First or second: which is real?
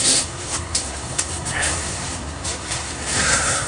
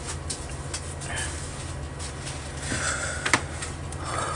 second